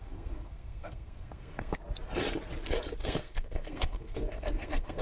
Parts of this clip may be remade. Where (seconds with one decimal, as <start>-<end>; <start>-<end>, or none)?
0.0-1.8; 3.0-5.0